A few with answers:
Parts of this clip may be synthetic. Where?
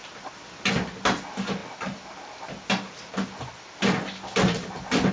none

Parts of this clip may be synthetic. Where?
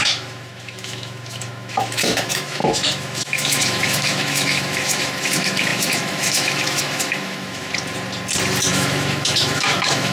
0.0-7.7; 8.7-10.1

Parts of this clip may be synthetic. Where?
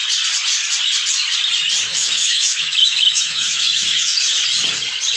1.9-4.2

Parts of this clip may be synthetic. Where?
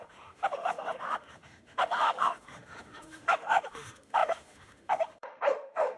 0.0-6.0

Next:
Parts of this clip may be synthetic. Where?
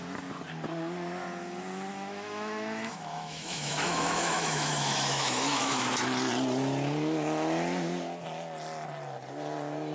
1.9-5.9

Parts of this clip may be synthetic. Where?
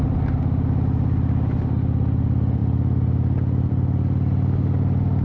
none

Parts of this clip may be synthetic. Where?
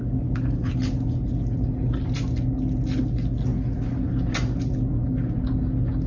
none